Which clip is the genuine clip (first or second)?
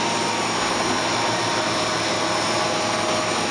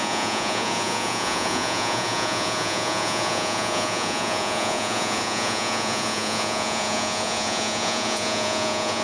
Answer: first